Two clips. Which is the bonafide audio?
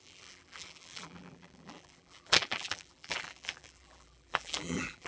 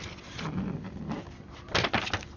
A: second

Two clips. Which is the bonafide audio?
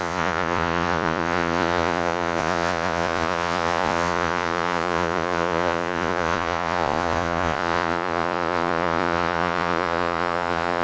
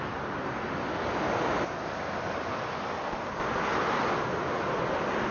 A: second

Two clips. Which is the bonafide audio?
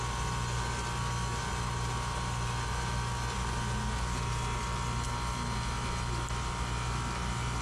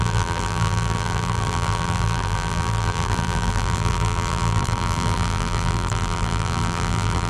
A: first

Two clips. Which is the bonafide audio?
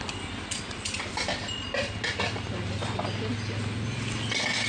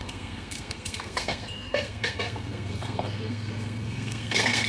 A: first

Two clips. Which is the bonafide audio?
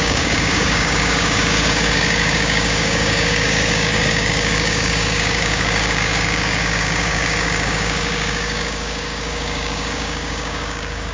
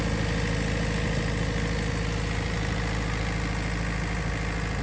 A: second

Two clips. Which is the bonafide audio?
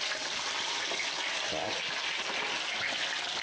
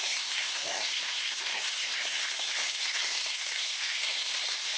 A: first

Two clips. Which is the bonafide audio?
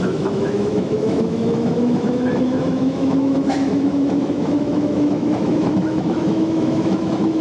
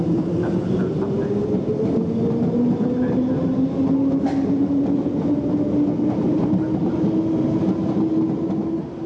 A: second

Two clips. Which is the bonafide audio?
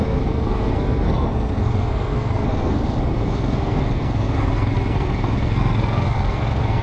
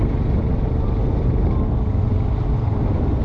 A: second